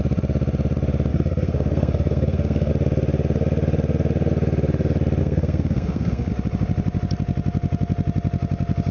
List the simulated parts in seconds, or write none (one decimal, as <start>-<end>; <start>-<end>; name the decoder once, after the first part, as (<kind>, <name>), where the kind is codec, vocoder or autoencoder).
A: 1.1-2.7 (codec, SNAC); 5.2-6.3